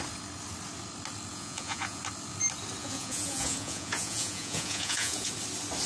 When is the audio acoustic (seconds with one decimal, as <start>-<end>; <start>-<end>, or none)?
0.0-1.3; 2.0-2.8; 5.3-5.9

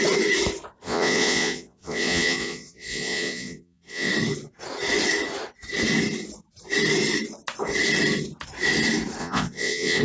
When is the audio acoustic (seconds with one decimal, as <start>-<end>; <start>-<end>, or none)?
0.0-0.8; 4.1-9.2

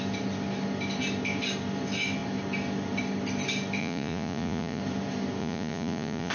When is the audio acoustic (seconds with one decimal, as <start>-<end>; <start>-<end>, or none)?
0.0-3.8; 4.8-5.4

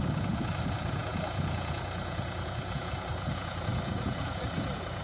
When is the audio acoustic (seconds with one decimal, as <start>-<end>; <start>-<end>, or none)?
none

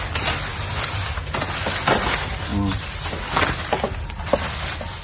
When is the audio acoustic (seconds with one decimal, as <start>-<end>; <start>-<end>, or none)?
0.0-5.0

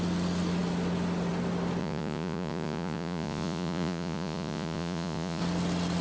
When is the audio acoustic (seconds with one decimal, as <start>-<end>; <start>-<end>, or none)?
0.0-1.8; 5.4-6.0

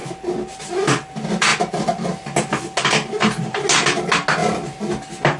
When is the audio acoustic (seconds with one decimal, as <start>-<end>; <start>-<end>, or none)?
0.0-5.4